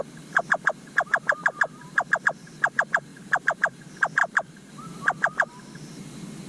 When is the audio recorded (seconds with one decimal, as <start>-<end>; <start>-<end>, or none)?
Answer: 0.0-1.4; 2.2-3.1; 3.8-4.2; 4.7-6.5